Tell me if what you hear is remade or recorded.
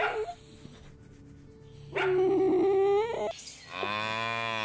recorded